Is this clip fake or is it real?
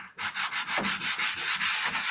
real